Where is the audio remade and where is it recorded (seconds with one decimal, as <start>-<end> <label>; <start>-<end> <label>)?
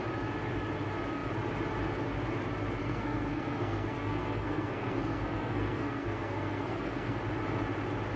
0.0-2.8 recorded; 2.8-7.2 remade; 7.2-8.2 recorded